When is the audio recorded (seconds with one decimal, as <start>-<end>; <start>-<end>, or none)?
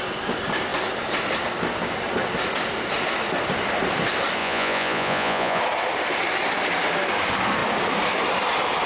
0.0-4.4; 5.6-8.9